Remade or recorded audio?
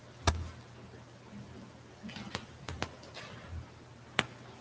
recorded